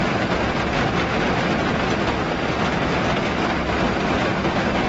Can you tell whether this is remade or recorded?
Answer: recorded